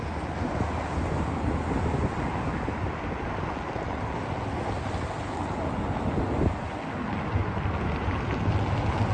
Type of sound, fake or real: real